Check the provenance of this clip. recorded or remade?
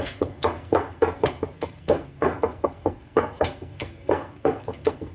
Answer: remade